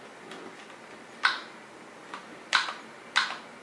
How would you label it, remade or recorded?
recorded